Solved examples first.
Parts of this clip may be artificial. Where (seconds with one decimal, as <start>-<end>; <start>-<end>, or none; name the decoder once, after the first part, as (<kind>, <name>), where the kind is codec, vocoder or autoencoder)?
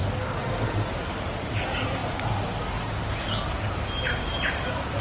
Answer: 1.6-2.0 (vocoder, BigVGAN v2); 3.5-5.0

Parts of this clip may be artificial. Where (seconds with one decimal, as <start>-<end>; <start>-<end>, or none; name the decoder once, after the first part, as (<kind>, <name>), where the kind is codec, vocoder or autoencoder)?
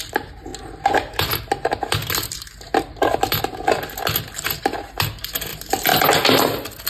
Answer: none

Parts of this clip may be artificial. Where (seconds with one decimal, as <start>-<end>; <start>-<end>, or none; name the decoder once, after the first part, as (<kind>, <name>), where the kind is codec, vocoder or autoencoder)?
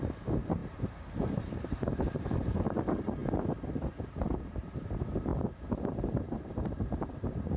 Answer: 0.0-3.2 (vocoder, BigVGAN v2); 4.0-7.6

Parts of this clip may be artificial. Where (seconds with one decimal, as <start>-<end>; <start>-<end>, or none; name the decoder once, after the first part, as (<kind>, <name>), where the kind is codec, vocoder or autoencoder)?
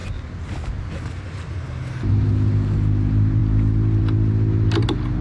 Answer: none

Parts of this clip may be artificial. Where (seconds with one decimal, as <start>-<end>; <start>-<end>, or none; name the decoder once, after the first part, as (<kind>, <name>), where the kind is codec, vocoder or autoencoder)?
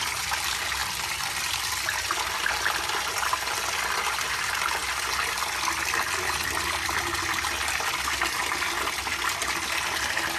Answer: none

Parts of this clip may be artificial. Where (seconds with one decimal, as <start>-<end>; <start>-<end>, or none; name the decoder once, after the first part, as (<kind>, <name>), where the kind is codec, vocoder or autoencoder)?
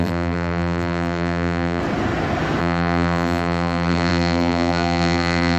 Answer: 0.0-1.8 (vocoder, BigVGAN v2); 2.6-5.6